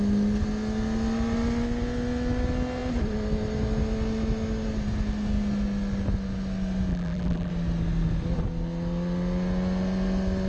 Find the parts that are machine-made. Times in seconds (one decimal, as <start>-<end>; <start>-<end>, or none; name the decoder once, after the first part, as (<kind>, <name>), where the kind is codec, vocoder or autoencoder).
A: 6.9-7.5 (vocoder, BigVGAN v2)